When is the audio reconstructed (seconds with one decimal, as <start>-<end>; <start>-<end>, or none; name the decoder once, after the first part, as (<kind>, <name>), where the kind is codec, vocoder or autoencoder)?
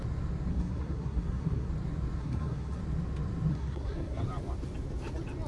0.5-1.7 (codec, SNAC); 2.2-2.8; 3.5-4.2